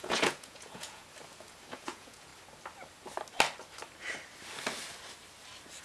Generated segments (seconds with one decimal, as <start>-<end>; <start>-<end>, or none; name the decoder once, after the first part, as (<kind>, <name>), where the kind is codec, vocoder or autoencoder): 0.0-1.0 (vocoder, Vocos); 1.7-2.3